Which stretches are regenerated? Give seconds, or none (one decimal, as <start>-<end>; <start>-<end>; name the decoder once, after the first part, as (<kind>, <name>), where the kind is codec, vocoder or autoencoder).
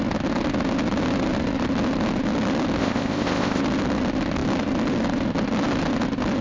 2.8-3.6 (codec, ZipCodec)